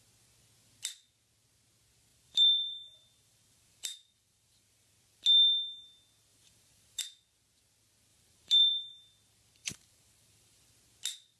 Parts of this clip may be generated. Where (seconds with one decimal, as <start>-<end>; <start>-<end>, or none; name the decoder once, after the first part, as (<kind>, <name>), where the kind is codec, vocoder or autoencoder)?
2.1-4.9 (vocoder, BigVGAN v2); 6.3-7.0; 8.1-8.9; 9.6-10.6